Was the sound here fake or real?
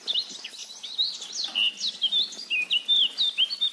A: real